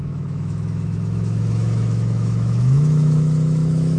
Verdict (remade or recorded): remade